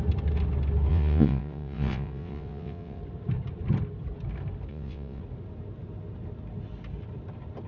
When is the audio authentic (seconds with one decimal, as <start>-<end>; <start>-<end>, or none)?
0.0-0.9; 3.0-4.7; 5.2-7.7

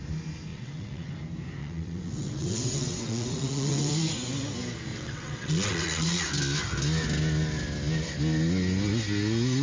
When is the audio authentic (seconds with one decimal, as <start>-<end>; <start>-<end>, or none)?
0.0-0.5; 1.1-1.6; 3.9-4.9; 6.3-9.6

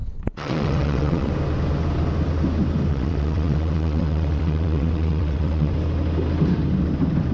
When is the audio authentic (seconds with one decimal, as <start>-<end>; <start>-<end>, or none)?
1.3-2.9; 5.7-7.3

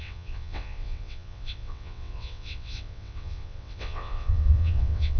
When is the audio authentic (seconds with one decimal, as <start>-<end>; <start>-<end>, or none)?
none

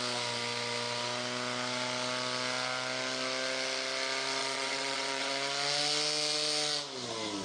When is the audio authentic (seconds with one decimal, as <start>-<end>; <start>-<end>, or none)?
0.0-4.4; 5.3-7.4

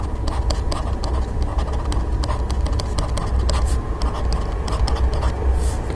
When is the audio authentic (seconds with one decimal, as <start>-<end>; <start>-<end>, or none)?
0.0-6.0

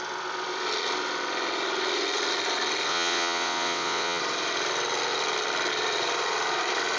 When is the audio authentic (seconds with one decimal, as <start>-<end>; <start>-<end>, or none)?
0.0-2.9; 4.2-7.0

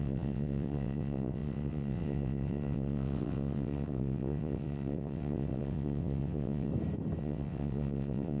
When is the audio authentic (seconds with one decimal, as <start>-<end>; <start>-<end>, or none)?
6.7-7.2